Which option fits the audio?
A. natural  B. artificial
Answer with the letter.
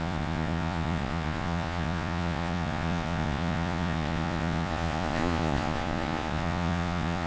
B